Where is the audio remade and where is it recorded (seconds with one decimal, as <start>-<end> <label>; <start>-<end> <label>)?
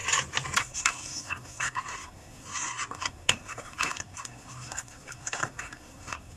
0.0-0.6 recorded; 0.6-6.4 remade